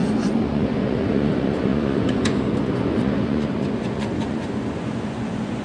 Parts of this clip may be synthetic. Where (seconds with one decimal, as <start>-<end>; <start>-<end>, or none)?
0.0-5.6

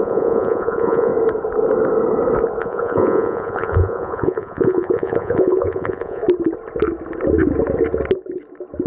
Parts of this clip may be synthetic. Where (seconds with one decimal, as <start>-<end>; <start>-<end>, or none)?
0.0-1.1; 2.6-6.2

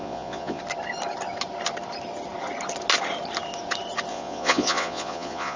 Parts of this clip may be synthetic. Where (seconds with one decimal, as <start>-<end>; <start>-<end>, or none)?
0.0-0.6; 4.1-5.6

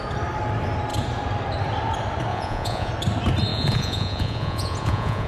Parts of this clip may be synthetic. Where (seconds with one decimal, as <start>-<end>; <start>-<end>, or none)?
2.3-2.9; 3.5-5.3

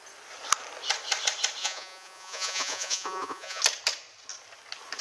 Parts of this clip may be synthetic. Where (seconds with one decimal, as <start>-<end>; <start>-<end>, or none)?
1.6-3.6

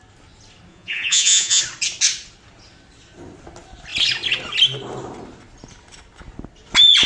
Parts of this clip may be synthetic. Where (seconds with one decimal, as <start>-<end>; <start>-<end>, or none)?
0.7-1.6